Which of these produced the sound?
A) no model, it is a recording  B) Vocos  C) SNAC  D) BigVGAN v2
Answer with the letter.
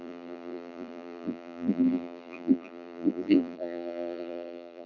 D